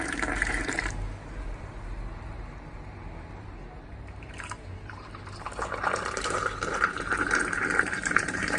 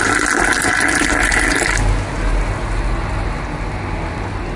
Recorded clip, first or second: second